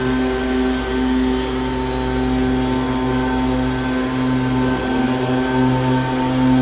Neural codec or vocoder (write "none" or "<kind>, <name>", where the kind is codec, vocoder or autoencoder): none